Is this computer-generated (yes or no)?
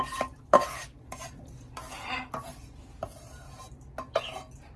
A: no